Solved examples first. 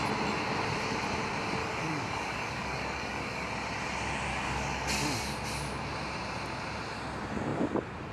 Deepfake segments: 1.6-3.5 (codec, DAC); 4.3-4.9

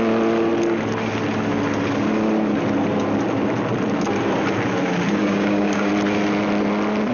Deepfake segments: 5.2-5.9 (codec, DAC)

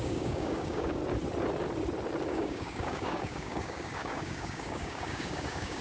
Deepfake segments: 0.0-1.0 (codec, DAC); 2.3-5.8

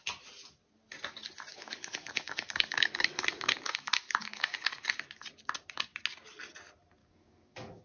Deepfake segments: 1.5-5.1 (codec, DAC); 7.0-7.8